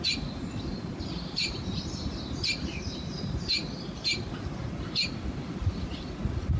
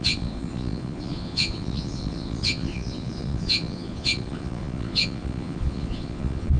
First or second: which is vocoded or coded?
second